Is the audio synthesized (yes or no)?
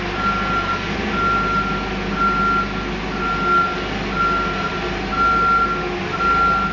no